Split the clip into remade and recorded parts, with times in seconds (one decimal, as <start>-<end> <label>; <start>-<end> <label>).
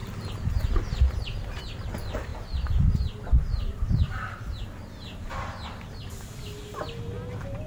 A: 0.0-7.7 recorded